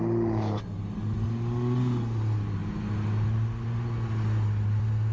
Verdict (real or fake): real